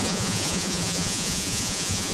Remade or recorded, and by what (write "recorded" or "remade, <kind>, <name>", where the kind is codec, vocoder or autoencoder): remade, vocoder, Vocos